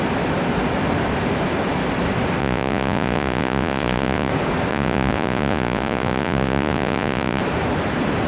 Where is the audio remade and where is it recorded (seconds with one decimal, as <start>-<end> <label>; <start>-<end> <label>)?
0.0-2.4 recorded; 2.4-4.3 remade; 4.3-4.7 recorded; 4.7-7.4 remade; 7.4-8.3 recorded